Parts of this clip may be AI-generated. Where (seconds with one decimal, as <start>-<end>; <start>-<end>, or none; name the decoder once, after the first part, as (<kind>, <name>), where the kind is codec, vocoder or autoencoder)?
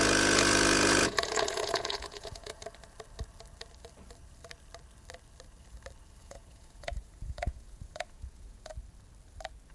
0.0-2.6 (vocoder, Vocos); 6.2-8.7